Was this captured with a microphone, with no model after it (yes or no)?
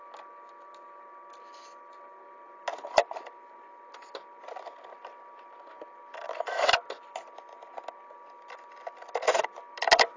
yes